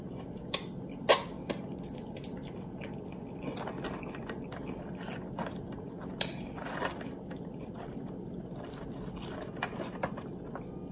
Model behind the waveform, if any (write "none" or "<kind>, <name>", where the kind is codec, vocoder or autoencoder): none